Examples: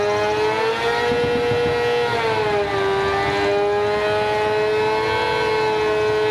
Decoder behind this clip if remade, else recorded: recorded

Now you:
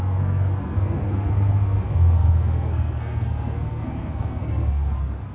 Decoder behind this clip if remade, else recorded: remade, codec, SNAC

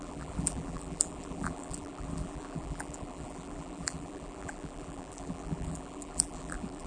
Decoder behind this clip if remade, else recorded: remade, vocoder, BigVGAN v2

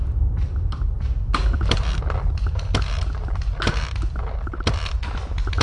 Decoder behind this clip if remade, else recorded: recorded